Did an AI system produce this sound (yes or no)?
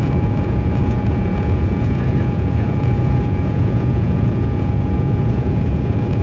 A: yes